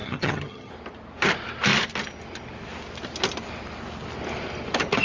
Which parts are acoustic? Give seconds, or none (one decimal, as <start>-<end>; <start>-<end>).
0.7-5.0